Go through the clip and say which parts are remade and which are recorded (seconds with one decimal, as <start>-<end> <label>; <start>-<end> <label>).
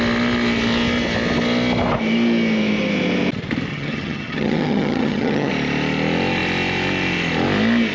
0.0-3.7 recorded; 3.7-5.5 remade; 5.5-7.9 recorded